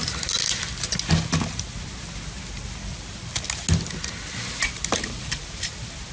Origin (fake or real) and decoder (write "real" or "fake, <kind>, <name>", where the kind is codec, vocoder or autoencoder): real